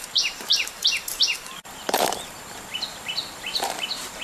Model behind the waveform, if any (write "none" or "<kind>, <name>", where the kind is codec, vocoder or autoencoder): vocoder, BigVGAN v2